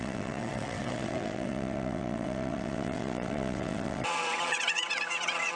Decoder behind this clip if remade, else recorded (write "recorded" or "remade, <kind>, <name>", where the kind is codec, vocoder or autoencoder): remade, vocoder, WaveNeXt